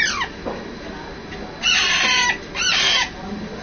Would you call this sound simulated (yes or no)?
no